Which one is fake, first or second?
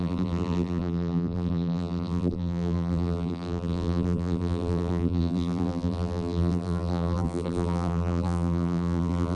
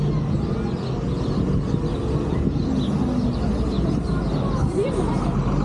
first